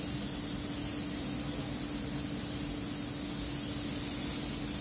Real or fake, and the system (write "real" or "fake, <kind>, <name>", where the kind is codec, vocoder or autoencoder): real